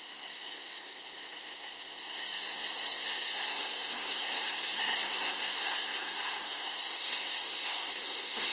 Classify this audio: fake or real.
fake